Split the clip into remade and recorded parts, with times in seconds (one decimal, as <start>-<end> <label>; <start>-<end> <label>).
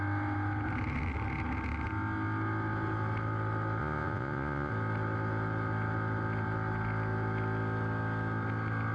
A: 0.0-3.8 recorded; 3.8-4.7 remade; 4.7-8.9 recorded